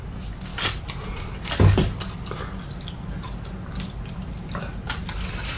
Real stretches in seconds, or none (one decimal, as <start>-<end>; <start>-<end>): 0.0-5.6